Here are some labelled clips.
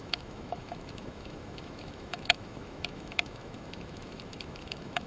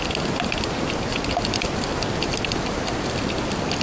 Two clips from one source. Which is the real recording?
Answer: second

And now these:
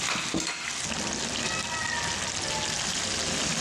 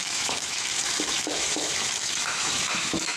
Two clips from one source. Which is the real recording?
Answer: first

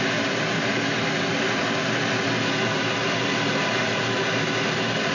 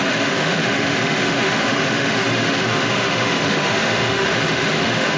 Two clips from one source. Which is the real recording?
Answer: first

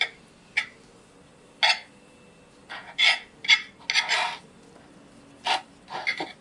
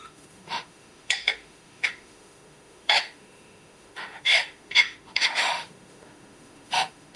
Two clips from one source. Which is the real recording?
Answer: first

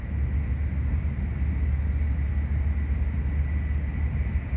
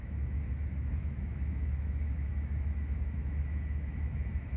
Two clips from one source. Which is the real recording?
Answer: first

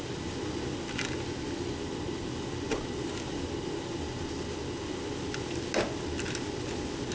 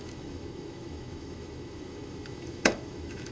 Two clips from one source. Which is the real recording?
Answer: first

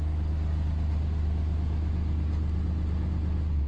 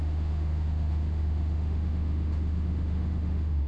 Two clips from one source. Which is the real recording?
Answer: first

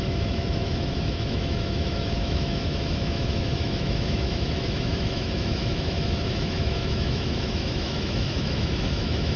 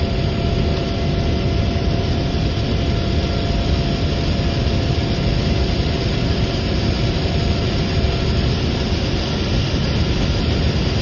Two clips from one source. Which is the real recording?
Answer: second